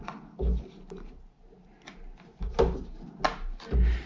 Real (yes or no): yes